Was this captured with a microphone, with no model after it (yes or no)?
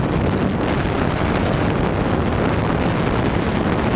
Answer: yes